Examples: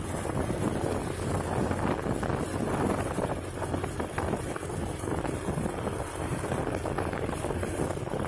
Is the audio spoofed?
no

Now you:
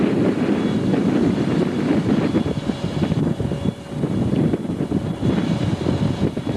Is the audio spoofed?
no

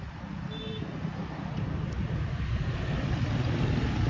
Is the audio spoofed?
no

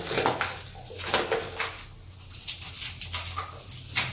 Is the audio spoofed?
no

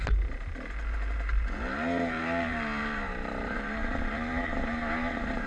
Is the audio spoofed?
yes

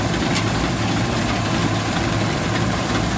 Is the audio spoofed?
no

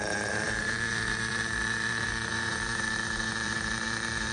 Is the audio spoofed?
yes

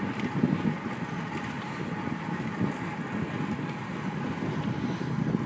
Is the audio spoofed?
no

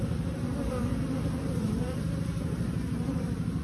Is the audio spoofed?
yes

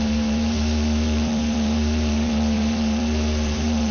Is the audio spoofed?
yes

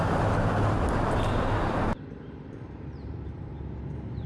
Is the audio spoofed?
yes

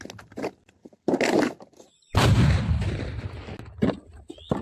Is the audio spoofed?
no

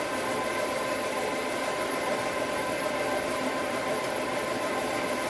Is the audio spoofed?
yes